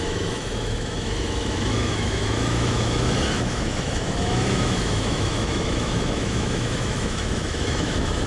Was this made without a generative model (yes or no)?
no